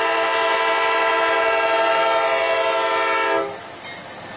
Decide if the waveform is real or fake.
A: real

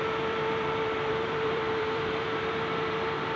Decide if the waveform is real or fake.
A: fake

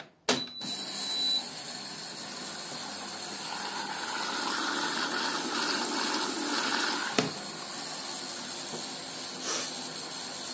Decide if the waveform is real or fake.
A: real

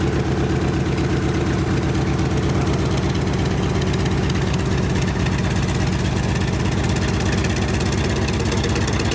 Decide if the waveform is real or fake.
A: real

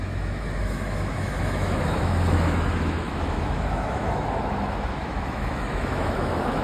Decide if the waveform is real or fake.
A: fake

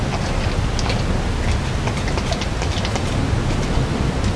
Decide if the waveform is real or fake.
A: real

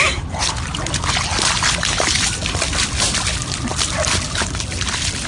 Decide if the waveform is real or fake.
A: real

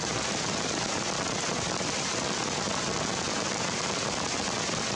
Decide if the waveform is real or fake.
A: real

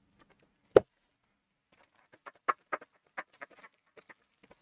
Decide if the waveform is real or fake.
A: real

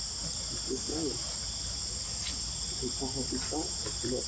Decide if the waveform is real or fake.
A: real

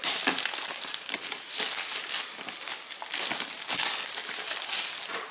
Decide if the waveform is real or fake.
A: real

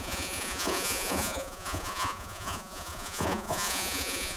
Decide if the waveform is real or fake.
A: fake